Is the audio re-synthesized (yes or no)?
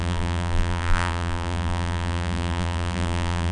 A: yes